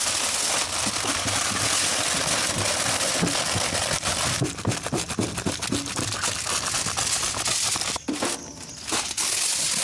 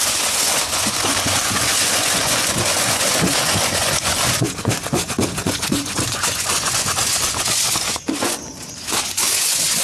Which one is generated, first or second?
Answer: second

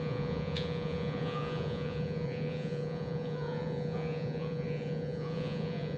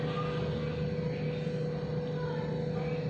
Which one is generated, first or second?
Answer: first